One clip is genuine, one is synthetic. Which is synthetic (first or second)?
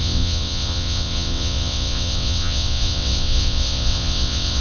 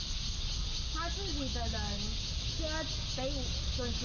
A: first